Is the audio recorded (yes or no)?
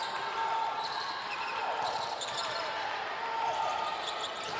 yes